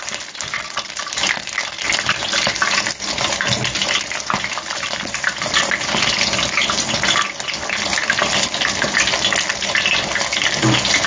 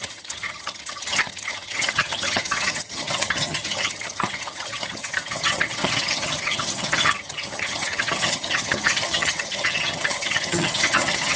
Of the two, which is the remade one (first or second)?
second